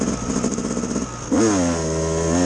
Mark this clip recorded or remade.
recorded